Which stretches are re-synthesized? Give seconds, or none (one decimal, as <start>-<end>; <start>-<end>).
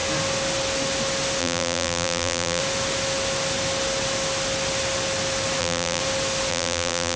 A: 1.4-2.6; 5.6-6.0; 6.5-7.2